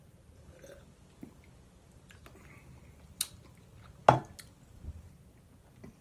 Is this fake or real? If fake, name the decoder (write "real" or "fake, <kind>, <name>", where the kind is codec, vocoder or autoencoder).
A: real